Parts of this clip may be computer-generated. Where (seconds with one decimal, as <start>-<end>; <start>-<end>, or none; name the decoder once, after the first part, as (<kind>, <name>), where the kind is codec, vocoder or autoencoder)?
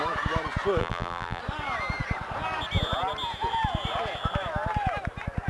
0.8-1.4 (vocoder, BigVGAN v2)